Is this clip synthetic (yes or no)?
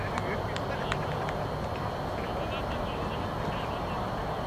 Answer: no